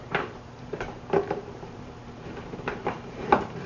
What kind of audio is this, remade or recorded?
remade